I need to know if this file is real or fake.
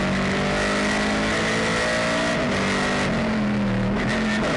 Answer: real